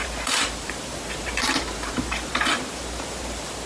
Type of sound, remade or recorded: remade